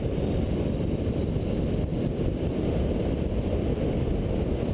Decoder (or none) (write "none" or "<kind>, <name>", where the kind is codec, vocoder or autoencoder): vocoder, BigVGAN v2